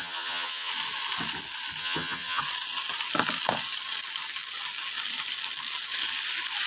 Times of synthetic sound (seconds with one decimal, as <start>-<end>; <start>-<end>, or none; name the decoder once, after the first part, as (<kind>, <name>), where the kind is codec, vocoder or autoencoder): 0.0-0.7 (vocoder, HiFi-GAN); 1.8-2.4